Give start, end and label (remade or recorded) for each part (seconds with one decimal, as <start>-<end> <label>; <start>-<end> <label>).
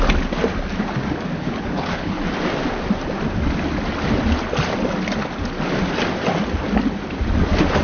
0.0-1.4 recorded; 1.4-2.2 remade; 2.2-7.8 recorded